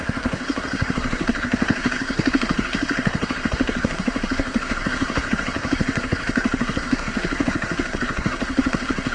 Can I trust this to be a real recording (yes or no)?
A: no